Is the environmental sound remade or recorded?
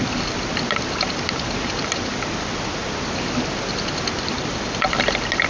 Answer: recorded